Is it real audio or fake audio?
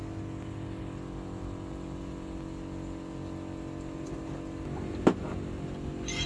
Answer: real